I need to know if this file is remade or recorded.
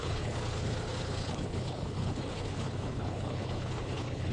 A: remade